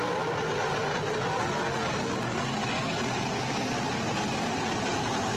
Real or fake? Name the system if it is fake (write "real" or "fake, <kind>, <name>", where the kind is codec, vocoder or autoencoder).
real